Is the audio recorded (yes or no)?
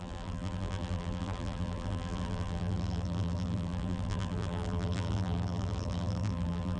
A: no